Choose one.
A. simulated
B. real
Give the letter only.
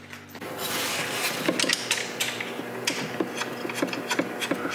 B